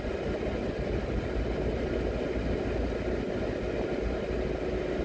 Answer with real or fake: real